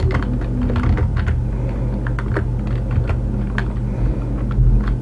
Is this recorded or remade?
recorded